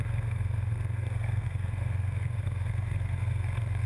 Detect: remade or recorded remade